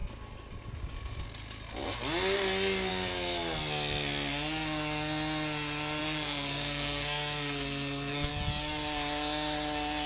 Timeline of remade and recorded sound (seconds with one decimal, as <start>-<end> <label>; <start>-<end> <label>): 0.0-6.0 recorded; 6.0-8.3 remade; 8.3-10.1 recorded